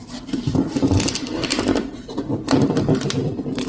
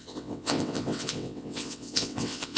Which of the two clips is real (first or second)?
first